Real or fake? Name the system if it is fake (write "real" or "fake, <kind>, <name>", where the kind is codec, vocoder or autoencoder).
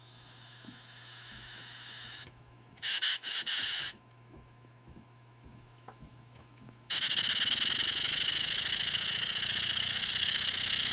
fake, autoencoder, DAC-VAE